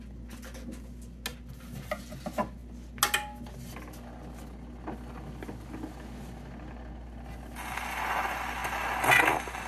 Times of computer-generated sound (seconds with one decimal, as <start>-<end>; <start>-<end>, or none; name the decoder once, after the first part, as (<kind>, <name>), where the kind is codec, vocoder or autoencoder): none